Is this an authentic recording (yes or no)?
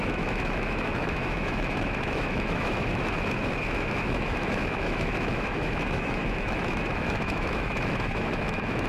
no